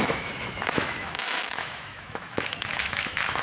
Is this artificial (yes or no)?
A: yes